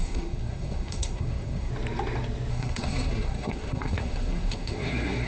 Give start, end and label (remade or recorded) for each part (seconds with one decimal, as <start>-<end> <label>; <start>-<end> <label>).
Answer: 0.0-1.7 remade; 1.7-2.5 recorded; 2.5-5.3 remade